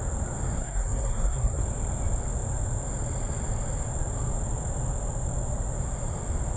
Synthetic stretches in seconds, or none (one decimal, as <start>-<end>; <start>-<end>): 0.6-1.6